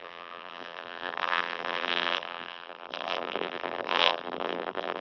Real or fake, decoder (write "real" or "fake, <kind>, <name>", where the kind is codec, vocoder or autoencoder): fake, vocoder, BigVGAN v2